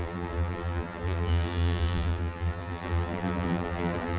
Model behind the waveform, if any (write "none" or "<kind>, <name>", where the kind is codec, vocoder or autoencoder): vocoder, BigVGAN v2